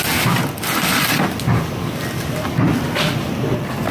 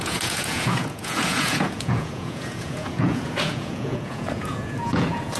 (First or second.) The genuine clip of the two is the first